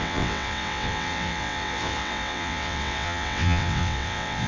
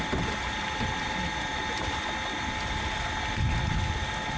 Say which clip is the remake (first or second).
first